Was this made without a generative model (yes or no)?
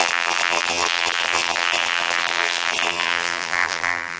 no